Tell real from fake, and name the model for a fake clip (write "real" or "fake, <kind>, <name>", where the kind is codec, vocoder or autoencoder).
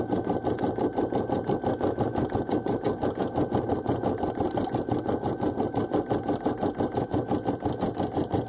real